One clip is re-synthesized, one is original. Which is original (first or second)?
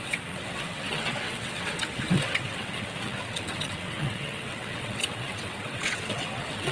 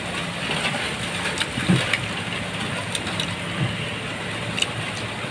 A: second